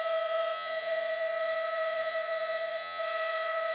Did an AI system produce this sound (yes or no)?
yes